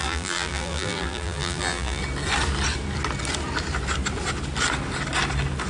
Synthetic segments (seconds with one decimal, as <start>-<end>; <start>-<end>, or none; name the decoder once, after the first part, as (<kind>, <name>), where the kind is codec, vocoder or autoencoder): 0.0-2.0 (vocoder, BigVGAN v2)